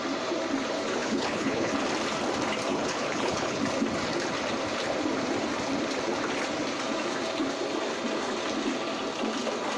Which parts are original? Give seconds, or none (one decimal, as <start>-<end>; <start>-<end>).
0.0-1.0; 1.7-2.7; 3.6-9.8